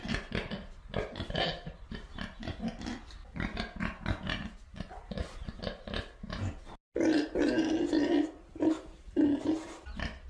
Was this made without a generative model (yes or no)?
yes